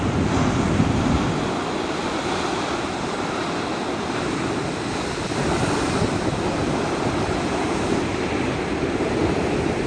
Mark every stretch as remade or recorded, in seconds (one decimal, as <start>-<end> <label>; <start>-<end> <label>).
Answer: 0.0-9.9 recorded